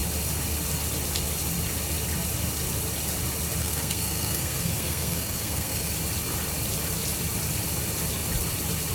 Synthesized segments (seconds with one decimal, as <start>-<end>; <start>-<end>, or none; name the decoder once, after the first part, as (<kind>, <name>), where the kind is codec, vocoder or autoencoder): 3.6-5.9 (codec, SNAC)